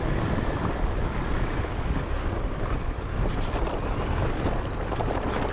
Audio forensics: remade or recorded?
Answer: recorded